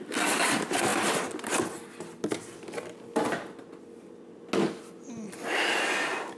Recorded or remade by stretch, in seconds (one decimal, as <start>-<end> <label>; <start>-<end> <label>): 0.0-6.4 recorded